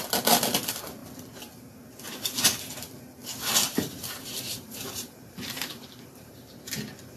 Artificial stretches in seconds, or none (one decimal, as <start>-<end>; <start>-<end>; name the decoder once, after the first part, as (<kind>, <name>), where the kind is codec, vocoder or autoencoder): 3.2-6.7 (vocoder, BigVGAN v2)